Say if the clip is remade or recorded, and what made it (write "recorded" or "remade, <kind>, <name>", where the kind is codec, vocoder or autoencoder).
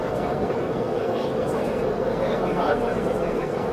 remade, codec, SNAC